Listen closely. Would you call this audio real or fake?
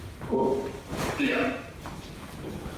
real